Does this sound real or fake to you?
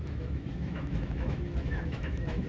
fake